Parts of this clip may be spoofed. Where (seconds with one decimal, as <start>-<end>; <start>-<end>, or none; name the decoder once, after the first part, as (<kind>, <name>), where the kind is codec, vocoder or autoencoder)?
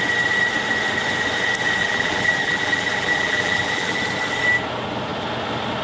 1.8-4.0 (vocoder, BigVGAN v2)